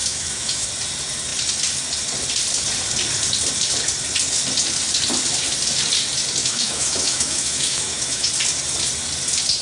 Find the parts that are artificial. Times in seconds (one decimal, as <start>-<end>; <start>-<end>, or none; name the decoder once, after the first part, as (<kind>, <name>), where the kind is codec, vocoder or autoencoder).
0.0-0.7 (autoencoder, DAC-VAE); 6.4-8.3